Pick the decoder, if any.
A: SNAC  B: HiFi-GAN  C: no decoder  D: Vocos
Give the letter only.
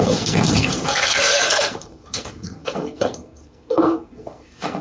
A